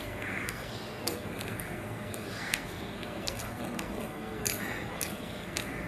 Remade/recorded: remade